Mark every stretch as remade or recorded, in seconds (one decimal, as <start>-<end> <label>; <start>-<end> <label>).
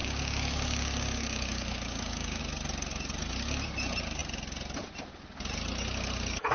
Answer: 0.0-2.4 remade; 2.4-6.5 recorded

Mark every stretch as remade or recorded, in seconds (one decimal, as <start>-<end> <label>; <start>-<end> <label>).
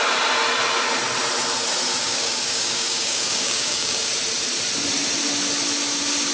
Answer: 0.0-2.0 recorded; 2.0-4.1 remade; 4.1-6.3 recorded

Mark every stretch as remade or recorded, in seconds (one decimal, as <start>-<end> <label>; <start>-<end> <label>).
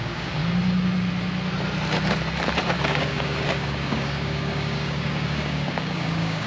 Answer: 0.0-0.4 remade; 0.4-2.6 recorded; 2.6-6.5 remade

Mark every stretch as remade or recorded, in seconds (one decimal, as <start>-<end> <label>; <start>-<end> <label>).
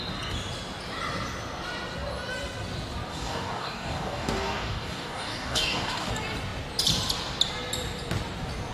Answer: 0.0-3.1 recorded; 3.1-6.1 remade; 6.1-8.7 recorded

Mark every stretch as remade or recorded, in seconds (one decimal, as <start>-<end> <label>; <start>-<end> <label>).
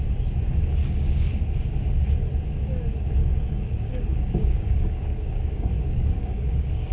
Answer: 0.0-0.8 recorded; 0.8-1.4 remade; 1.4-3.2 recorded; 3.2-6.9 remade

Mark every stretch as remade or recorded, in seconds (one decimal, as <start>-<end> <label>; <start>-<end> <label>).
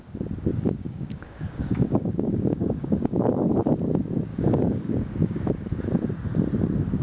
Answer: 0.0-0.5 recorded; 0.5-3.5 remade; 3.5-4.3 recorded; 4.3-5.8 remade; 5.8-7.0 recorded